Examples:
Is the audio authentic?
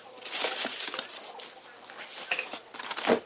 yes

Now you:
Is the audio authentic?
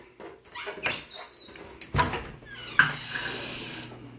yes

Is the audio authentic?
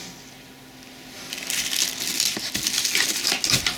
yes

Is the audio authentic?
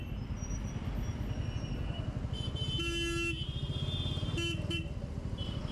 yes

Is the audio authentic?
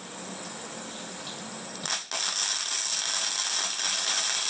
yes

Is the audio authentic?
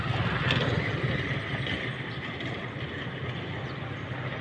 yes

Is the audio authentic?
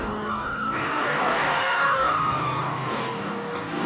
no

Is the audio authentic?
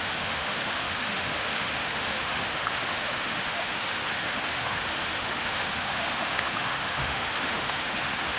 no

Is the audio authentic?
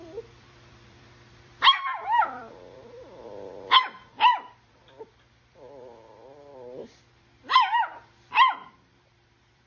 no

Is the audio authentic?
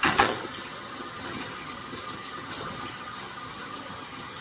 no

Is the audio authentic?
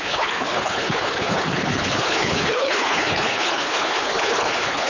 no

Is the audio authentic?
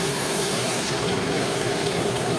no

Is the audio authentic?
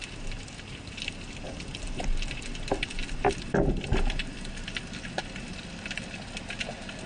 yes